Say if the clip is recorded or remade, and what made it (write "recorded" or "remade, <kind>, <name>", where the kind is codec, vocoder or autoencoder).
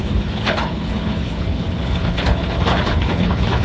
remade, codec, HILCodec